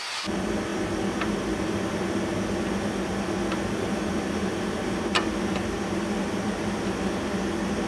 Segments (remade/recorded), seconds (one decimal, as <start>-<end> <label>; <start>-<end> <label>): 0.0-7.9 recorded